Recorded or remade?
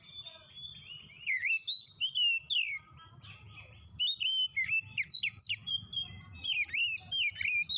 recorded